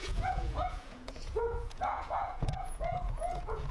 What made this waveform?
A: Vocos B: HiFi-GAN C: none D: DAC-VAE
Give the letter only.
A